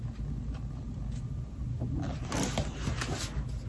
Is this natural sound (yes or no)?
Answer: yes